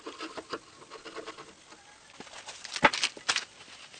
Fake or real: real